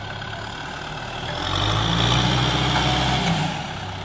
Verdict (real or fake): real